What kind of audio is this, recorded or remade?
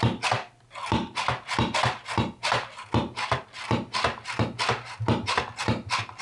recorded